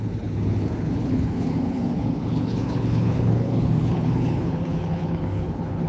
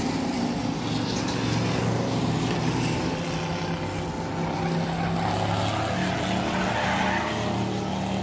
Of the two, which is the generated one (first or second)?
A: first